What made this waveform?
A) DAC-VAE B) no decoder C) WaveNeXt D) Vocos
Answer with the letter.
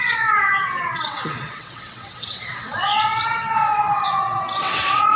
C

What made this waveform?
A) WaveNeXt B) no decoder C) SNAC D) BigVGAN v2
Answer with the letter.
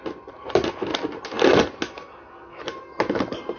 B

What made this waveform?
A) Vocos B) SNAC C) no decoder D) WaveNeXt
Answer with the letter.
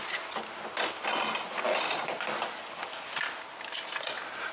C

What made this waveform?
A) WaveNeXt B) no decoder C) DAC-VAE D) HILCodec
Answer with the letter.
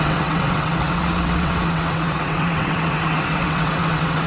A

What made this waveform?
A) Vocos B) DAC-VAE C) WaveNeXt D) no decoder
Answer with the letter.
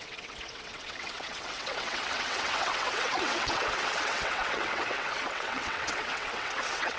C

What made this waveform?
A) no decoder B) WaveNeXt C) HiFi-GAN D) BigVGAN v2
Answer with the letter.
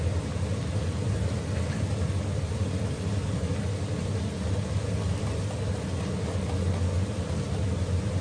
A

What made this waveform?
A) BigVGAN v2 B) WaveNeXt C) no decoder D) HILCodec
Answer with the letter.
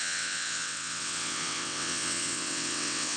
B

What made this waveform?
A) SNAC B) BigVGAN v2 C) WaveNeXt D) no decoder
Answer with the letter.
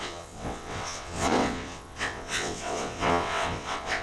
C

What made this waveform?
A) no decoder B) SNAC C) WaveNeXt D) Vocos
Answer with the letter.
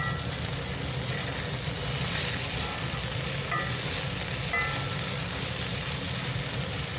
A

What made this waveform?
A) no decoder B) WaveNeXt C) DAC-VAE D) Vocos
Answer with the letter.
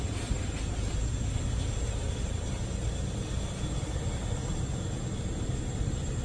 A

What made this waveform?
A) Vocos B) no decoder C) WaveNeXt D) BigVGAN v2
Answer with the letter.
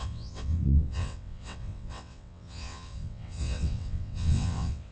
C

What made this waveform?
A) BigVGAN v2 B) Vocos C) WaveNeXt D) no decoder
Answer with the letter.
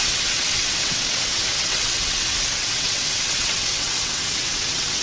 C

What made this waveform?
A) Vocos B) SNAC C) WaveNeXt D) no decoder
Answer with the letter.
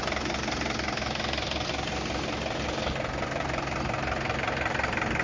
D